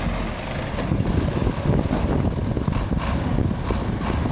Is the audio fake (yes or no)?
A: no